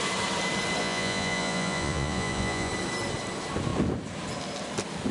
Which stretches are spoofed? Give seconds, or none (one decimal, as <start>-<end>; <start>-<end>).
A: 0.8-2.7